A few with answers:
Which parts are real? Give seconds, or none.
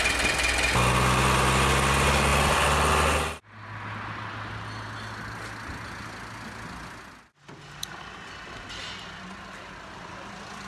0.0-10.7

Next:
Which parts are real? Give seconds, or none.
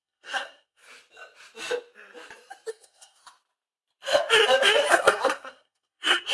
0.8-2.7; 3.2-4.9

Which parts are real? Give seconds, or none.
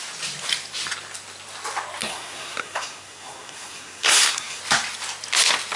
0.0-2.0; 4.6-5.8